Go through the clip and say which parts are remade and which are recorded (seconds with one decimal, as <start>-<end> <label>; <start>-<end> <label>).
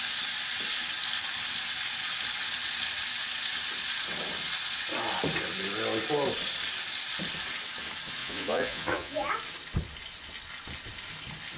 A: 0.0-8.2 recorded; 8.2-9.3 remade; 9.3-11.6 recorded